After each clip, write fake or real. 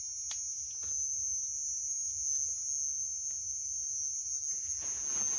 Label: real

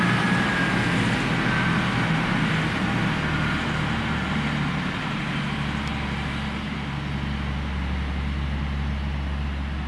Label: real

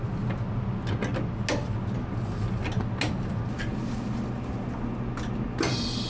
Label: real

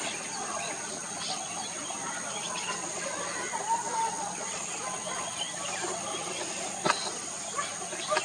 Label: real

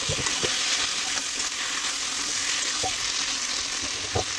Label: real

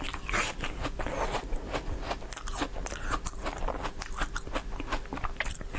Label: real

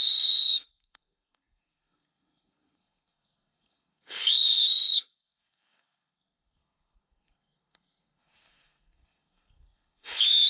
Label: fake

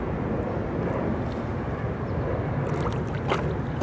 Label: real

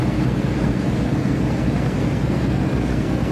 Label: fake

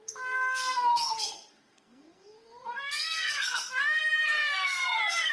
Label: fake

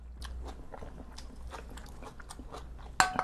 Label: real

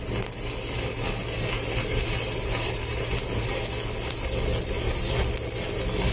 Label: real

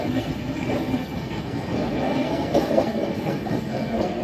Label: fake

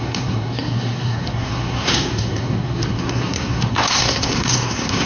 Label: fake